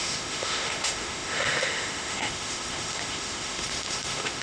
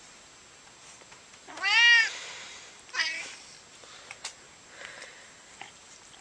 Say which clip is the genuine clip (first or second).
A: second